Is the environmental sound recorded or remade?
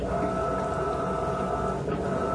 recorded